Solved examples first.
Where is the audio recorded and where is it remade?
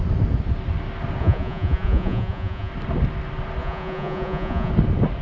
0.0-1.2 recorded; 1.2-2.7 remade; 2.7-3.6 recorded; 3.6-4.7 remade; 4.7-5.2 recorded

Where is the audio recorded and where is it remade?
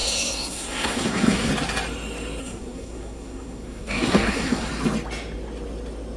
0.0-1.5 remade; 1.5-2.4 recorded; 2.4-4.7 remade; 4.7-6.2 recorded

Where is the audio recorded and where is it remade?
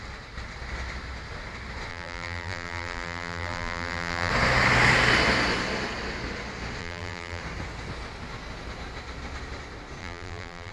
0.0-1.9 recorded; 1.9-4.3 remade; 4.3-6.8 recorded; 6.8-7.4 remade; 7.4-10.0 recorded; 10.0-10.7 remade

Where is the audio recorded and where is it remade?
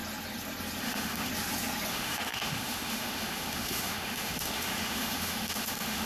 0.0-0.8 recorded; 0.8-1.3 remade; 1.3-1.9 recorded; 1.9-6.1 remade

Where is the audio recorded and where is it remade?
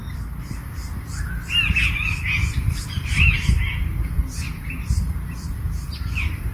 0.0-0.6 remade; 0.6-2.4 recorded; 2.4-6.5 remade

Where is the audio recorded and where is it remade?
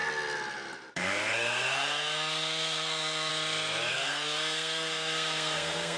0.0-0.9 recorded; 0.9-3.3 remade; 3.3-3.9 recorded; 3.9-6.0 remade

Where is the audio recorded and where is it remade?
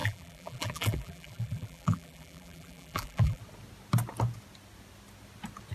0.0-3.4 remade; 3.4-5.7 recorded